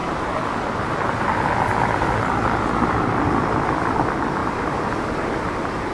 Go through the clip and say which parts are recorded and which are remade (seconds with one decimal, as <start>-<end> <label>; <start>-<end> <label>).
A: 0.0-4.4 recorded; 4.4-5.9 remade